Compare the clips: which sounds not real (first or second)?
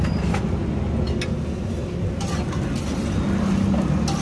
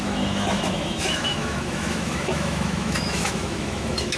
second